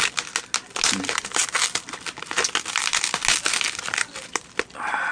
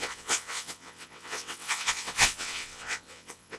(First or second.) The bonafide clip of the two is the first